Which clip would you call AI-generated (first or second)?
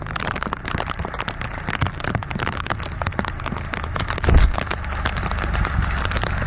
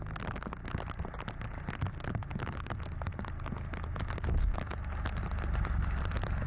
first